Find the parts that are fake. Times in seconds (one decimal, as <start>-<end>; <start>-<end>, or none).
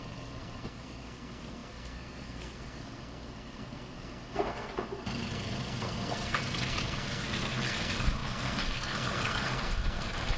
0.0-10.4